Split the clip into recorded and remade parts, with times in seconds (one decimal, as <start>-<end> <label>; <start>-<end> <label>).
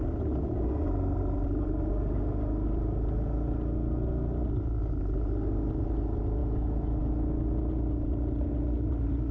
0.0-6.4 recorded; 6.4-7.0 remade; 7.0-9.3 recorded